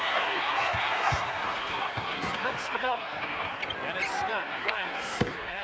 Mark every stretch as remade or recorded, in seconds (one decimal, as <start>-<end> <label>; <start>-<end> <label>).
0.0-3.6 remade; 3.6-4.3 recorded; 4.3-5.6 remade